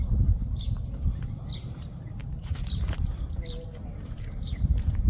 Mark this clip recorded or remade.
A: remade